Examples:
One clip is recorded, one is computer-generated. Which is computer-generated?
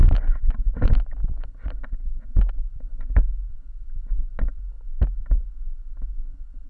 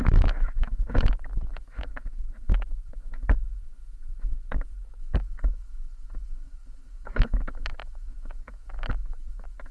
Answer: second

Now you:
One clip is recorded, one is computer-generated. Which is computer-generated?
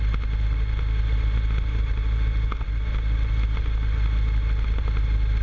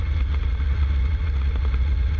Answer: second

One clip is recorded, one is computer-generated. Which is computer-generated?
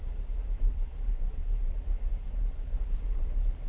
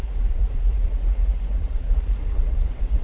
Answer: second